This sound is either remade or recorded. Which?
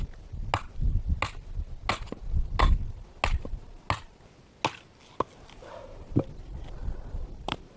recorded